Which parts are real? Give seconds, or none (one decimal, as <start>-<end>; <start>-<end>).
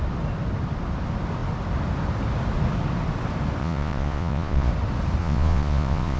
0.0-3.6; 4.7-5.2